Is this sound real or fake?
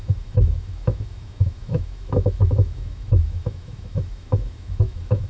fake